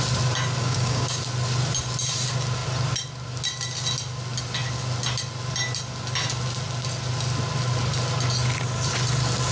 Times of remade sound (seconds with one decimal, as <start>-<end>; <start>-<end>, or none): 0.6-1.2